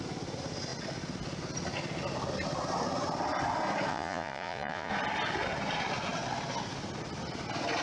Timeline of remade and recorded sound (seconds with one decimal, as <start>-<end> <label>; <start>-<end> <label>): 0.0-3.9 recorded; 3.9-4.9 remade; 4.9-7.8 recorded